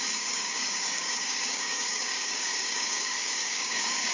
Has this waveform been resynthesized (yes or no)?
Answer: yes